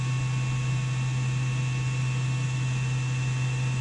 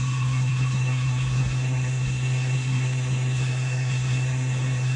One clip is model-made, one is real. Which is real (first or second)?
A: first